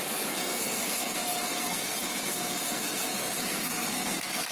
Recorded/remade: remade